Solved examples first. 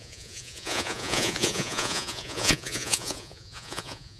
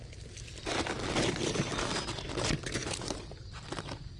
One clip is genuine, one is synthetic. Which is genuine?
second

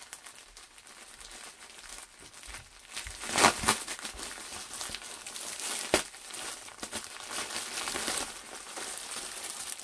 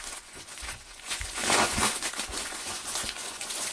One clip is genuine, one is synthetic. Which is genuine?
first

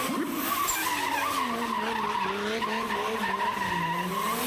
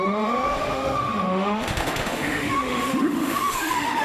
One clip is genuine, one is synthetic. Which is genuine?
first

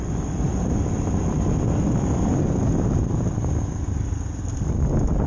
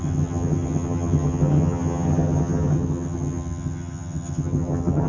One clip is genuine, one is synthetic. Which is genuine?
first